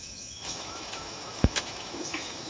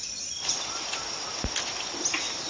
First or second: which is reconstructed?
first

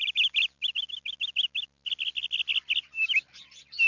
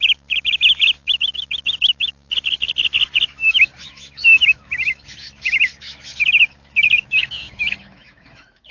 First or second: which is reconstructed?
second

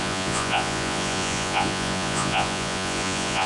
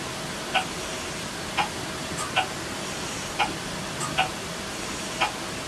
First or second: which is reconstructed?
first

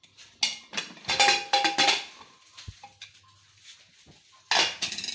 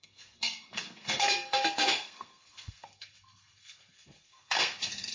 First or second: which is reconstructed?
second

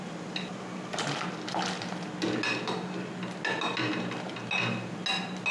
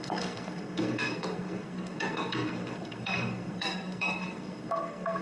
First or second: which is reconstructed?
second